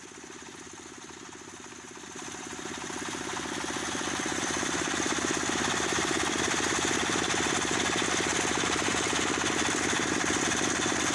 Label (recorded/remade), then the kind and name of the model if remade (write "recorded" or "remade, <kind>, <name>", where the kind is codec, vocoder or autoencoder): recorded